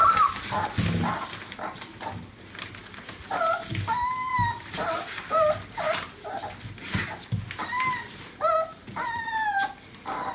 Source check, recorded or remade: recorded